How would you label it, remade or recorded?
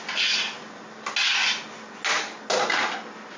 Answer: recorded